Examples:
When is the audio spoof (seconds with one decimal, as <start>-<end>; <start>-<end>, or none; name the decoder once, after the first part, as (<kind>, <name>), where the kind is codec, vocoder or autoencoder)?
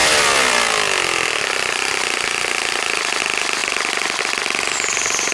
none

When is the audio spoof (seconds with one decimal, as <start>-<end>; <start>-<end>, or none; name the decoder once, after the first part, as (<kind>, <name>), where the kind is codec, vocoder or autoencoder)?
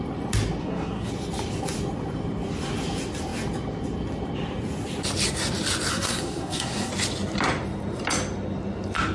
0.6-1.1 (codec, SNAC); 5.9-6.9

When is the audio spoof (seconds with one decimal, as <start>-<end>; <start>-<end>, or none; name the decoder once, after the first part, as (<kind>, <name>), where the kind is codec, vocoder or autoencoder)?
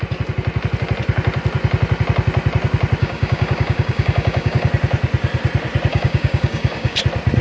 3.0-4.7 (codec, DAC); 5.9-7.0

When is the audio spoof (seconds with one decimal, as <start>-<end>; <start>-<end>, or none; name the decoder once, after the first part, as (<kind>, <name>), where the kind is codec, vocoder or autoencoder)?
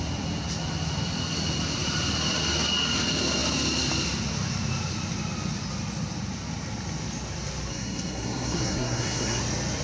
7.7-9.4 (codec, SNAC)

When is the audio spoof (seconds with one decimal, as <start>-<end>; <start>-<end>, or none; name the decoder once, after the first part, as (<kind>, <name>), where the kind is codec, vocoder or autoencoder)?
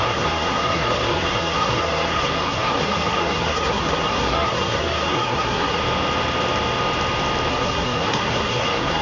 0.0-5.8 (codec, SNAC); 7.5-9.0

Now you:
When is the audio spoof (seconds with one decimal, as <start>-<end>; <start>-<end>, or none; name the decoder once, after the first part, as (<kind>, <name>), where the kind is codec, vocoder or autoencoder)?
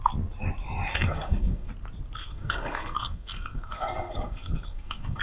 0.9-1.7 (codec, SNAC); 2.2-5.2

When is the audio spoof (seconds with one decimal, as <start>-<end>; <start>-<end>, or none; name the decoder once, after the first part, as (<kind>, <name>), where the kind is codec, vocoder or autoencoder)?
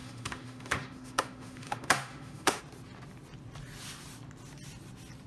0.0-2.6 (autoencoder, DAC-VAE)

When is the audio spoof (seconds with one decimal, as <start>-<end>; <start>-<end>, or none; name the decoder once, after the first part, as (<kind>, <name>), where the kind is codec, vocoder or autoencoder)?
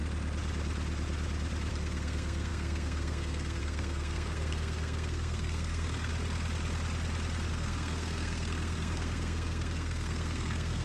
1.7-6.1 (codec, SNAC); 7.5-10.8